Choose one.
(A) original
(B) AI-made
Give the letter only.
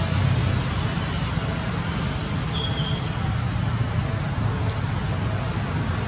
A